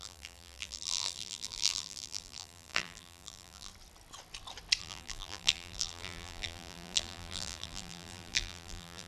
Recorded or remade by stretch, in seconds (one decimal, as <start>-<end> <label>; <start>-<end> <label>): 0.0-3.7 remade; 3.7-4.8 recorded; 4.8-9.1 remade